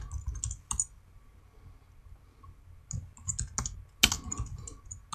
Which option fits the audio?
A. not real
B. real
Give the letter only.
B